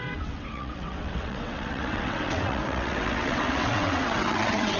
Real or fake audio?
fake